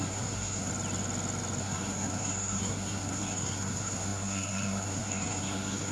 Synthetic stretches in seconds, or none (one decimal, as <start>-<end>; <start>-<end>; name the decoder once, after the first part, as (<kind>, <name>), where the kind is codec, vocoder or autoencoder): 0.0-0.7 (codec, SNAC); 1.6-5.9